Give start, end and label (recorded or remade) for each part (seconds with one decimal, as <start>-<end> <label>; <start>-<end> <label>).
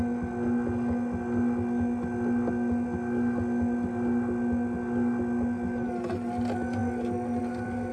0.0-7.9 recorded